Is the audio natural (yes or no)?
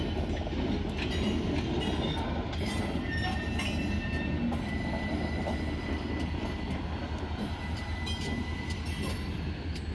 yes